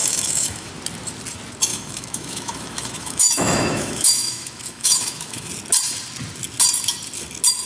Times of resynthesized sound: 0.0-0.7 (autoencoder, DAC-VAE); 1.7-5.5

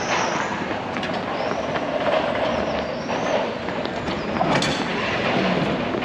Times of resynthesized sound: none

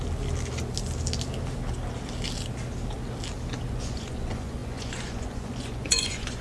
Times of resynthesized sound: 3.7-6.4 (vocoder, Vocos)

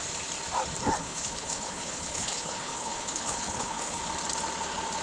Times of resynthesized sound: 1.0-4.0 (codec, HILCodec)

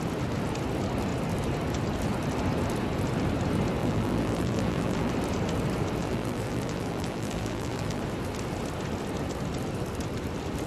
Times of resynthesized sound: 3.8-5.1 (vocoder, BigVGAN v2); 6.0-8.0